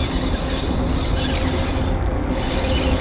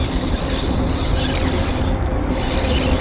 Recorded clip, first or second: first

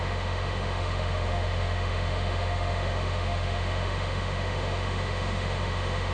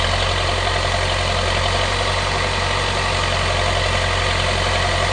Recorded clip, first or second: second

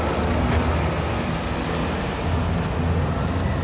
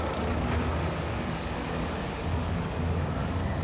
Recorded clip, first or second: first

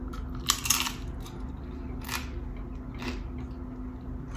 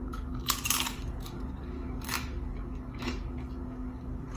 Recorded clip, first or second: first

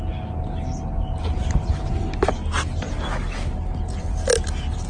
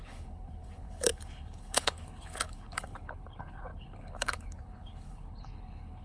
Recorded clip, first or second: first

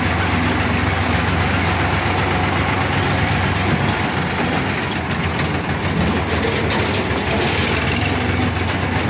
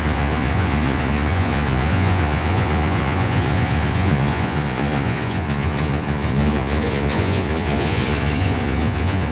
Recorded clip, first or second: first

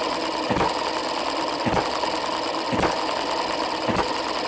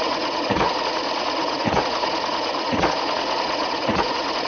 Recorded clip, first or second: first